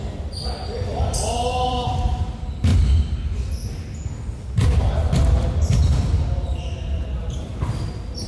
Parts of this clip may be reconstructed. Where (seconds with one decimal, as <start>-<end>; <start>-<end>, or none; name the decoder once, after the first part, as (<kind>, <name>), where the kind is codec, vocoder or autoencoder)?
0.0-2.7 (vocoder, BigVGAN v2); 4.9-7.5